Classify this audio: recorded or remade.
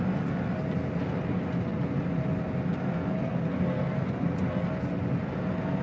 recorded